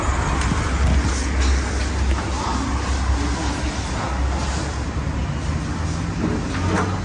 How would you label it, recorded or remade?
recorded